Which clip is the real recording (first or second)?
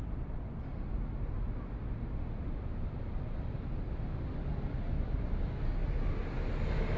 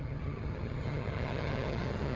first